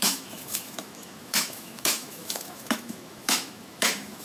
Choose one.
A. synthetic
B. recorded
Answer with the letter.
A